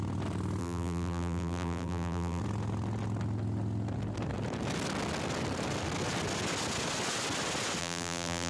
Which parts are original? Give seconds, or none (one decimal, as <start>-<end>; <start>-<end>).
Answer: 0.0-0.6; 2.4-7.8